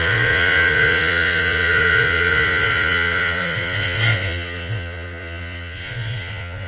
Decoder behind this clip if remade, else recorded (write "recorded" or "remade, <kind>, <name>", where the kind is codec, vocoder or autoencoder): remade, vocoder, Vocos